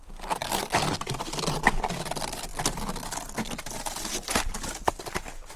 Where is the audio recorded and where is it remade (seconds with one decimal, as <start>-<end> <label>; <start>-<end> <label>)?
0.0-5.6 recorded

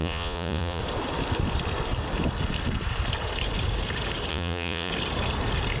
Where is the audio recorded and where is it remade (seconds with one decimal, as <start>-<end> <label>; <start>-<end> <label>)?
0.0-0.8 remade; 0.8-4.3 recorded; 4.3-4.9 remade; 4.9-5.8 recorded

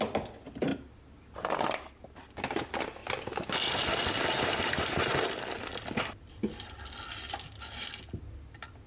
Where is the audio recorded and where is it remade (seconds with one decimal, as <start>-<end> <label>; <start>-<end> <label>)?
0.0-8.9 recorded